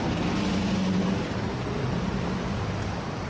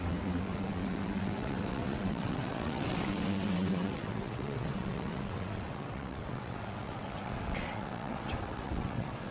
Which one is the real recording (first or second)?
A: first